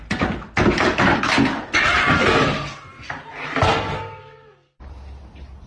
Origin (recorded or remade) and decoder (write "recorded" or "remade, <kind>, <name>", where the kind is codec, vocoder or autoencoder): recorded